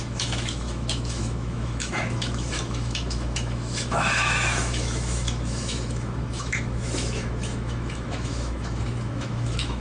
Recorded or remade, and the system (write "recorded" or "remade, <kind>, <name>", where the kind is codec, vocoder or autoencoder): remade, autoencoder, DAC-VAE